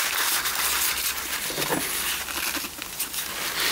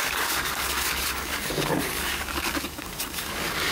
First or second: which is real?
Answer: first